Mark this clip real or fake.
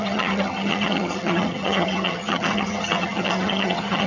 fake